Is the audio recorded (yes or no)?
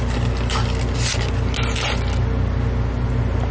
yes